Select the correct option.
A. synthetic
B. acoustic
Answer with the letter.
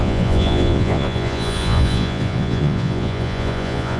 A